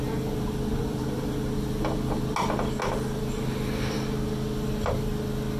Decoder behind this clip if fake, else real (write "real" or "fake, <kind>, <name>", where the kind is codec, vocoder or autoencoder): real